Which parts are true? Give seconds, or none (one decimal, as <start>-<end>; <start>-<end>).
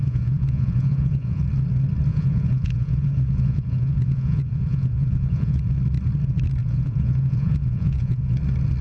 1.4-2.1; 5.6-6.6; 8.4-8.8